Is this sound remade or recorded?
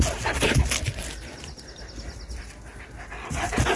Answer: recorded